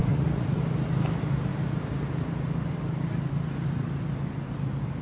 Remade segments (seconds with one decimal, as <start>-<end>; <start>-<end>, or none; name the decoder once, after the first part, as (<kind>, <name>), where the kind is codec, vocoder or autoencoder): 0.0-0.6 (vocoder, Vocos)